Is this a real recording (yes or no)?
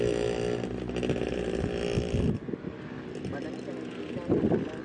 yes